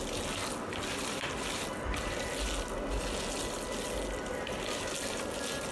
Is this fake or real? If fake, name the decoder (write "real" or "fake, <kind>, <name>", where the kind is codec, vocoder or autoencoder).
real